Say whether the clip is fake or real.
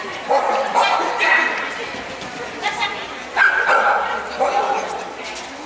fake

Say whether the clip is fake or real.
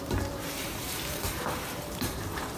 fake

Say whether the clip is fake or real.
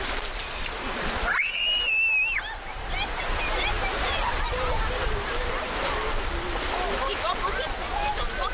real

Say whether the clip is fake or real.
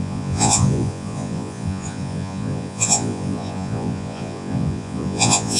fake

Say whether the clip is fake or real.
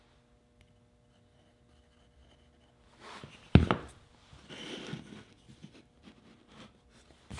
real